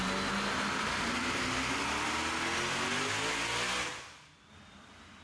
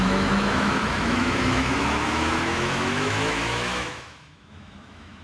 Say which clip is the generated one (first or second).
second